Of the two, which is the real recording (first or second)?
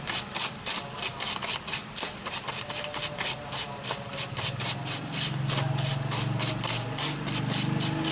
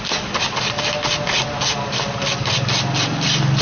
second